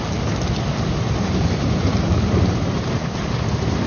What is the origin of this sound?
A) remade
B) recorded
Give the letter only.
B